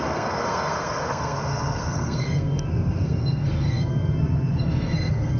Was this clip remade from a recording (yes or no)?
yes